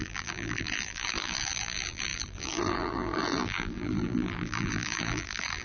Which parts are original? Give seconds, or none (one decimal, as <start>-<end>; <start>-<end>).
none